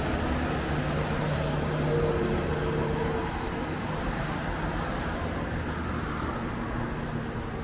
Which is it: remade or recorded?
recorded